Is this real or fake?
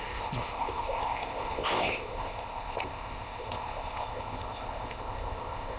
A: fake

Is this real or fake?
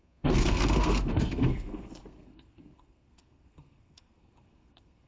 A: fake